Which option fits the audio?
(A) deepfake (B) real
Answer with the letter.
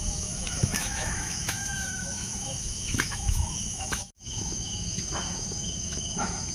A